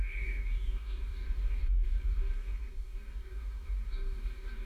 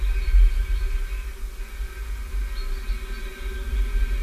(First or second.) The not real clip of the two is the first